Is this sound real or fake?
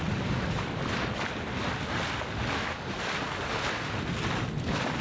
real